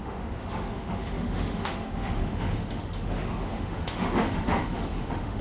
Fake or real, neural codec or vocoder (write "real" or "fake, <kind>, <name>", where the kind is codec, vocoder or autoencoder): fake, autoencoder, DAC-VAE